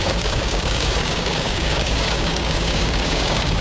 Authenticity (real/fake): fake